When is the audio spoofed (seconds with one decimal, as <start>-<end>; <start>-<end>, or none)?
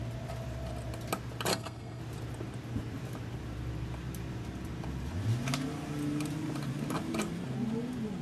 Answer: 1.5-2.0